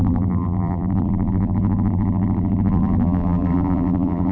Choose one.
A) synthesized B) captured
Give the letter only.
A